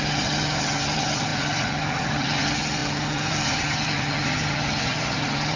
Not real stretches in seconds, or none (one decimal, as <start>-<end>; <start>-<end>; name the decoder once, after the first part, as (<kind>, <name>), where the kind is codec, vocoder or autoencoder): 0.0-5.6 (vocoder, HiFi-GAN)